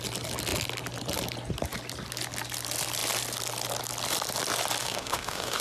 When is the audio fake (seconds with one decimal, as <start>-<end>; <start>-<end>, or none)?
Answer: 4.8-5.6

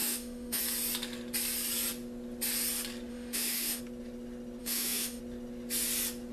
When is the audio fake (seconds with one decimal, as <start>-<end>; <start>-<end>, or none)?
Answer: 0.0-0.6; 3.1-3.8; 4.6-5.2

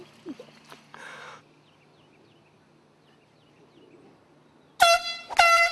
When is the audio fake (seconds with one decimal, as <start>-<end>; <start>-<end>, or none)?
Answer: 0.9-1.4